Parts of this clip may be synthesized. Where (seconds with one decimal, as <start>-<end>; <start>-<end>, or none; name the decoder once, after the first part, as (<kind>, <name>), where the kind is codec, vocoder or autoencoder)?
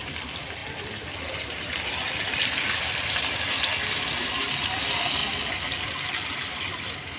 0.0-5.2 (vocoder, BigVGAN v2)